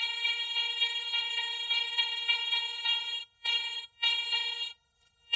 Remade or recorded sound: remade